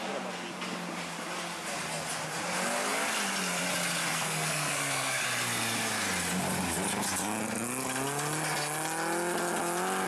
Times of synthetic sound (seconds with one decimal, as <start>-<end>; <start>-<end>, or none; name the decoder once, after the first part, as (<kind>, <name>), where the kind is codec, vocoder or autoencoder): 4.1-5.2 (codec, SNAC)